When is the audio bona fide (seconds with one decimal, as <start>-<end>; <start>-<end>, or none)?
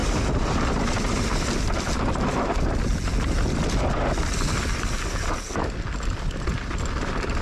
0.0-7.4